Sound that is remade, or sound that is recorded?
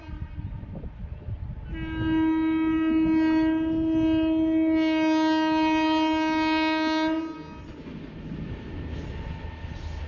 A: recorded